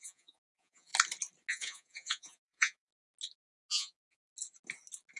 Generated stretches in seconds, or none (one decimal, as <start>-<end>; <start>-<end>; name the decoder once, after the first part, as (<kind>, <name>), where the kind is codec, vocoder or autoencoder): 0.0-0.9 (vocoder, Vocos); 1.5-2.9; 3.7-4.3